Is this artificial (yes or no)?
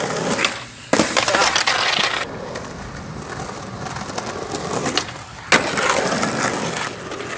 no